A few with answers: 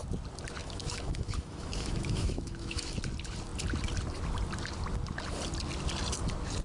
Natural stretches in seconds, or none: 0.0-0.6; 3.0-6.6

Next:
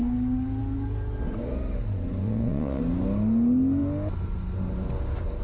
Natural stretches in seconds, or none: 0.0-2.2; 2.8-5.4

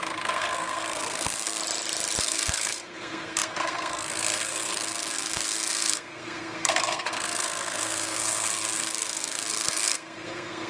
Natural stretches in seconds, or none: 1.6-2.2

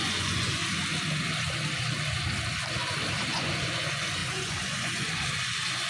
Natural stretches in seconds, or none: 0.6-3.3

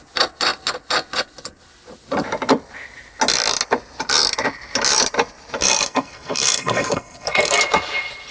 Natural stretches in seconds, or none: 0.0-5.6; 7.6-8.3

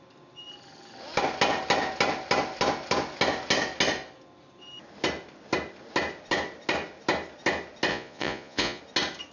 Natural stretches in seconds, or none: 0.0-7.9; 8.8-9.3

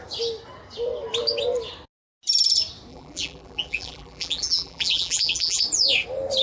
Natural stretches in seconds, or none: 0.0-2.9; 5.6-6.4